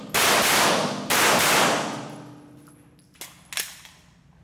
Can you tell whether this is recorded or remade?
recorded